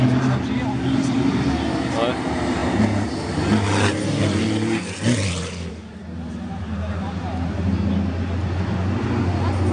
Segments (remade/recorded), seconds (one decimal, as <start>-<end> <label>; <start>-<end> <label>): 0.0-9.7 recorded